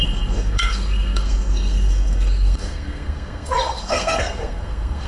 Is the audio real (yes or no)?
no